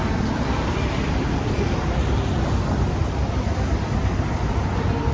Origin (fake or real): real